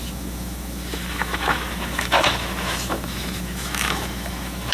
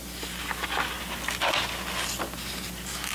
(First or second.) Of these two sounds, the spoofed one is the first